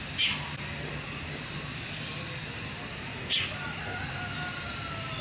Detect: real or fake real